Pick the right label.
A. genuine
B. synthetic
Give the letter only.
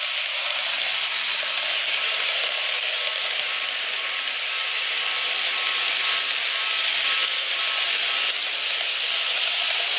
A